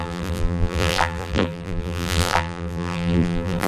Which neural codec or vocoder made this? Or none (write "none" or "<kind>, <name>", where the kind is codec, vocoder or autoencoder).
vocoder, BigVGAN v2